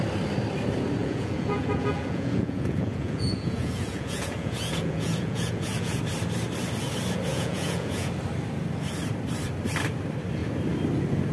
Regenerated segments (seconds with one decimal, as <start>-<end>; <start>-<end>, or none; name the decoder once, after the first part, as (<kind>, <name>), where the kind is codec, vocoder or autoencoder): 1.0-6.0 (vocoder, Vocos); 7.3-8.1